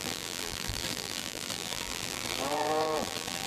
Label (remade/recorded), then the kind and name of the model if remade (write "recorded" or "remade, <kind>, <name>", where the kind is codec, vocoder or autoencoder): remade, vocoder, BigVGAN v2